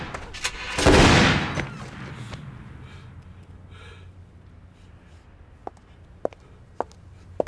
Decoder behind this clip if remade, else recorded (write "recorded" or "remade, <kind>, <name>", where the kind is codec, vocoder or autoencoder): recorded